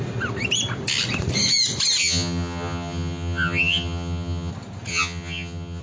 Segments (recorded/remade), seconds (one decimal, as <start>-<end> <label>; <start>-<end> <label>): 0.0-2.0 recorded; 2.0-4.5 remade; 4.5-4.9 recorded; 4.9-5.8 remade